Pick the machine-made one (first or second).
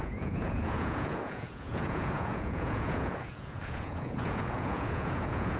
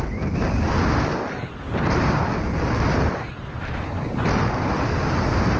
first